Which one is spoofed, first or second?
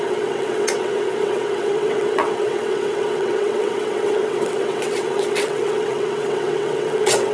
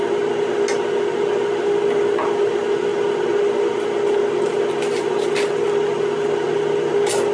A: first